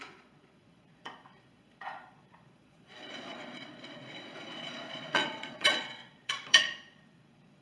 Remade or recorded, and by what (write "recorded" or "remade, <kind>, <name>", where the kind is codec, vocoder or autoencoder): remade, vocoder, Vocos